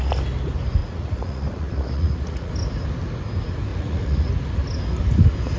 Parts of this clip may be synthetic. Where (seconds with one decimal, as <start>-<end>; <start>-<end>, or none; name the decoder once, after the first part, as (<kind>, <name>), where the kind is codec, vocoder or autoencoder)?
0.8-2.5 (vocoder, Vocos); 3.7-4.3

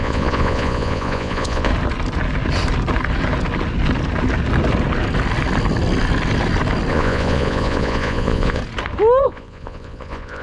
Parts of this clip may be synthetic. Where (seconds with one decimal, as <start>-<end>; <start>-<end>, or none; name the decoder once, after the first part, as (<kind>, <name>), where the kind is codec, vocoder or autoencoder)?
0.0-1.7 (vocoder, Vocos); 6.9-8.6; 9.2-10.4

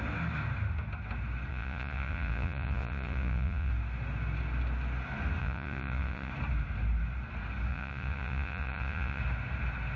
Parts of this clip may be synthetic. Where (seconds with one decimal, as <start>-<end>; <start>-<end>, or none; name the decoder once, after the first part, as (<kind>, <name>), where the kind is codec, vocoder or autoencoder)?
1.5-3.7 (vocoder, Vocos); 5.4-6.3; 7.7-9.2

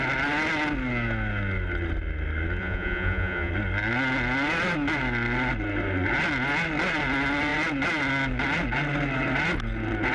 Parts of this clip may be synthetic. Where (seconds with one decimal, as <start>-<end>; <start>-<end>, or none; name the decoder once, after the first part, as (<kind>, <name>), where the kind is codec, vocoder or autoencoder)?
2.6-3.5 (vocoder, Vocos)

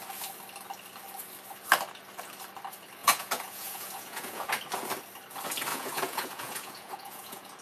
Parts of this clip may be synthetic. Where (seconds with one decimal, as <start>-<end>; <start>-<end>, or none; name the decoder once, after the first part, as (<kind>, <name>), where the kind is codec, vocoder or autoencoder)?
3.0-4.5 (vocoder, Vocos); 5.7-7.6